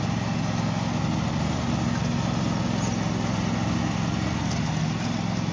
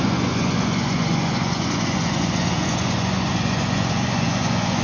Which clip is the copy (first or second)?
second